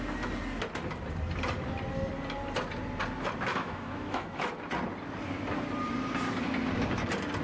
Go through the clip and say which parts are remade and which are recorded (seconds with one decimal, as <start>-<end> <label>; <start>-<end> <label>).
0.0-3.5 recorded; 3.5-4.5 remade; 4.5-7.4 recorded